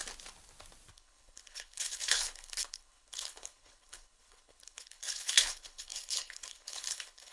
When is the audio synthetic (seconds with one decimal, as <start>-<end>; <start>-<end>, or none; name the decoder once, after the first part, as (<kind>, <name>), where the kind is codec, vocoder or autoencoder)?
0.9-7.3 (codec, HILCodec)